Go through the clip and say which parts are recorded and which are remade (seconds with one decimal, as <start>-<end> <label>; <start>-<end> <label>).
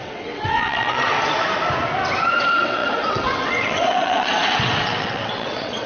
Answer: 0.0-1.1 remade; 1.1-2.3 recorded; 2.3-5.9 remade